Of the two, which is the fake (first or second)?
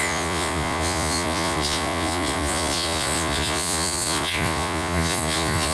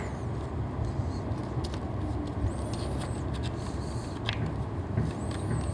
first